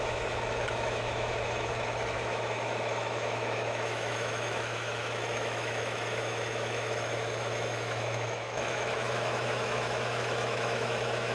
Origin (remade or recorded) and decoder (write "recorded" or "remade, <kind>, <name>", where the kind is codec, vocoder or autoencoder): remade, autoencoder, DAC-VAE